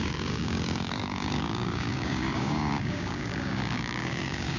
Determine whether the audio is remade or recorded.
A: remade